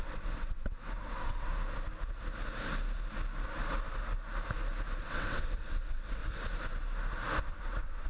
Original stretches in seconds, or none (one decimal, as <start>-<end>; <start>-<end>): 1.5-5.0; 6.2-7.4